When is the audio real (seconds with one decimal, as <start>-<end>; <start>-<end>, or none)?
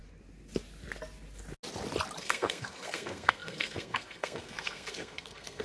0.0-2.2